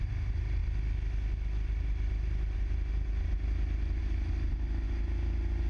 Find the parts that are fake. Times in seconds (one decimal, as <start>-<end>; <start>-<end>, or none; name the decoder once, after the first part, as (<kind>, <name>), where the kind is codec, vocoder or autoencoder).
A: none